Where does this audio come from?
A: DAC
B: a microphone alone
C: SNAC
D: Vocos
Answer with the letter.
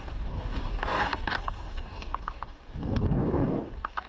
A